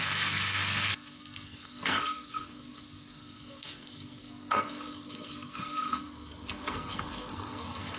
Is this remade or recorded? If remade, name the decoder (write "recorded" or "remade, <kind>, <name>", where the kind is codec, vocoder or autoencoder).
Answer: remade, codec, SNAC